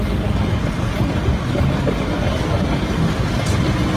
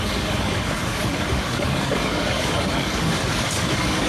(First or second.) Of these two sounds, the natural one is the first